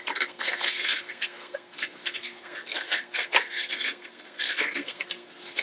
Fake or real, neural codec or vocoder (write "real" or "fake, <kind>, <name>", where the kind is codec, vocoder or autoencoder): fake, codec, SNAC